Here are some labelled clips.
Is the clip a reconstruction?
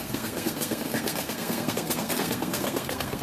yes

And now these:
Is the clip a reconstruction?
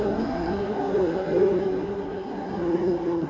yes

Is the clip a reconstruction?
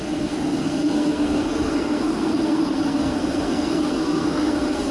yes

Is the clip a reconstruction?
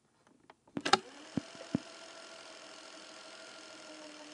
no